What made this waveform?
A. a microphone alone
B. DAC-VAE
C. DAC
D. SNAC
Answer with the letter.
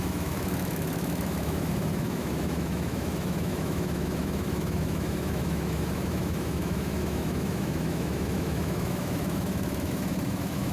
B